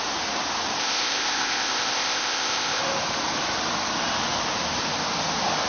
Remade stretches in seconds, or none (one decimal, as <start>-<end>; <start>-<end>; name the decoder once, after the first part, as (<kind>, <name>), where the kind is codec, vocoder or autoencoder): 0.8-2.8 (codec, ZipCodec)